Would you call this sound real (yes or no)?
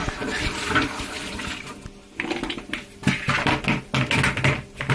yes